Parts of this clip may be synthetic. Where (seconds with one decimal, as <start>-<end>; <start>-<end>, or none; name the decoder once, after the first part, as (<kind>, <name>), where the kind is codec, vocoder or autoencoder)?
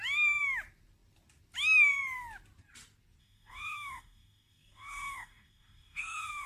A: 3.2-6.5 (codec, DAC)